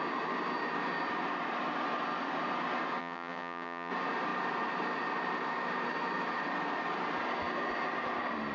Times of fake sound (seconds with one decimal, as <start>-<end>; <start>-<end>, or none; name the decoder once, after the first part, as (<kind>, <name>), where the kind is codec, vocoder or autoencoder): 3.0-3.9 (vocoder, WaveNeXt)